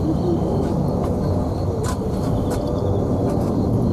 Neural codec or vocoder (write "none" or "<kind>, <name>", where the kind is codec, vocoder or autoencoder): none